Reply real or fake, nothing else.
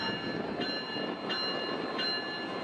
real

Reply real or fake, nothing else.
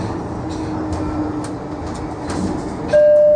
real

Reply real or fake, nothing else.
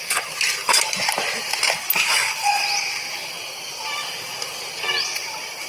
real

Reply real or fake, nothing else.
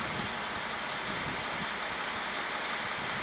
real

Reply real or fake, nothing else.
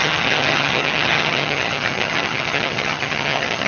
fake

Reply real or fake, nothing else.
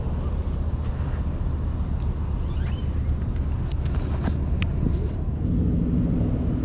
real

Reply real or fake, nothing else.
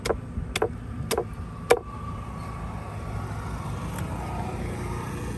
real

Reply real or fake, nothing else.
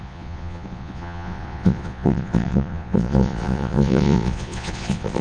fake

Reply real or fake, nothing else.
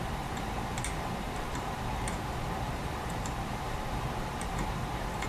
fake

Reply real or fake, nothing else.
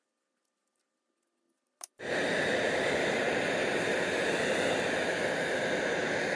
real